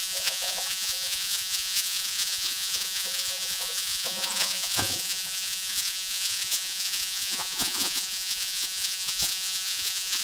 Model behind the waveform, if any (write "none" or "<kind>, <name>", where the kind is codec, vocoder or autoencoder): vocoder, Vocos